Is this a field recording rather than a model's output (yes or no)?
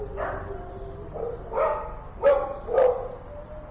yes